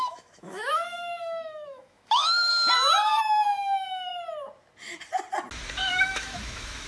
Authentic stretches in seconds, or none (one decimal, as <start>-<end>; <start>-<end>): 2.5-3.2; 4.1-5.9